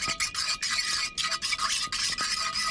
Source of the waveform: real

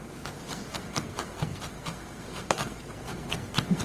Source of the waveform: fake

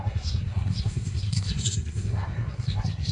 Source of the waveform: fake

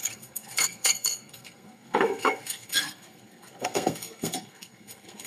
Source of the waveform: fake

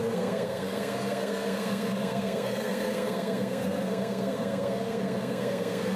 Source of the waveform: fake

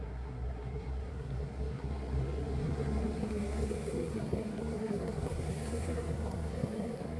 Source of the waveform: fake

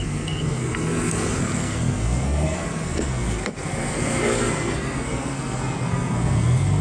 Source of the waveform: fake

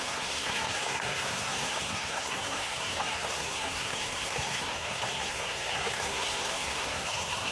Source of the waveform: fake